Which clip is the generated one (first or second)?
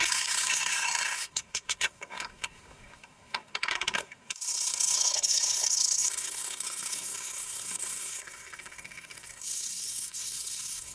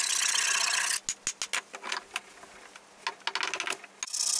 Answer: first